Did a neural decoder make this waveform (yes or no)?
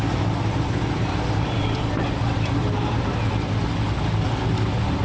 no